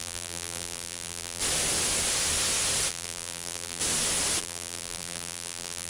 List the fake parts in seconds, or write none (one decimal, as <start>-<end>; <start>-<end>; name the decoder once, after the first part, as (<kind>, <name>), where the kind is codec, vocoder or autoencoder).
0.0-1.4 (vocoder, BigVGAN v2); 2.9-3.8; 4.4-5.9